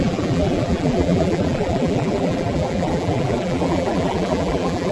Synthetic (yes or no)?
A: yes